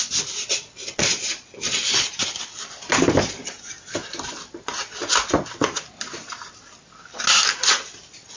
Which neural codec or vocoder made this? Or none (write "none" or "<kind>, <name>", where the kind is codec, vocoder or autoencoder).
none